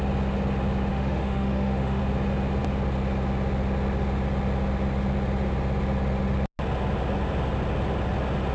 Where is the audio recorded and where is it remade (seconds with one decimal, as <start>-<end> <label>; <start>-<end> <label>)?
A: 0.0-0.9 recorded; 0.9-2.0 remade; 2.0-8.5 recorded